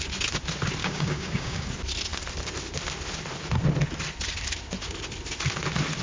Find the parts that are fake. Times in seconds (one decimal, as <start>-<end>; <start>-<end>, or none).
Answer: 0.8-1.7